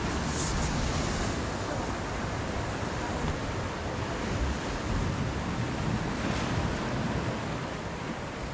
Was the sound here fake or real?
real